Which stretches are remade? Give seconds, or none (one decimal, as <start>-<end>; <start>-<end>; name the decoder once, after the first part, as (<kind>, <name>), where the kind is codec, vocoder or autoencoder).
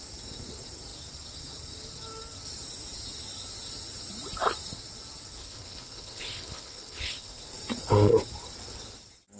5.4-7.4 (codec, HILCodec)